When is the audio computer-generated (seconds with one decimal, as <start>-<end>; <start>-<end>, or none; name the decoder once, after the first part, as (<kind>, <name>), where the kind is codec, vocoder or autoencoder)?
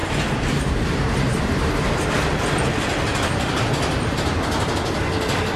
0.0-2.1 (vocoder, BigVGAN v2)